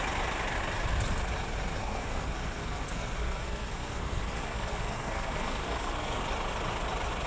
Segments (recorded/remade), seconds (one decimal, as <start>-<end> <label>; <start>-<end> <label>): 0.0-1.8 recorded; 1.8-6.2 remade; 6.2-7.3 recorded